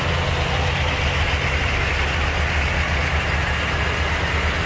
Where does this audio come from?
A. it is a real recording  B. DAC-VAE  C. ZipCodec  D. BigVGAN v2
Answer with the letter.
A